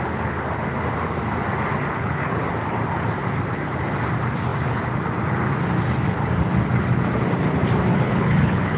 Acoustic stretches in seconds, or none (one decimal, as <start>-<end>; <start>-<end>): 0.0-1.9; 2.4-7.9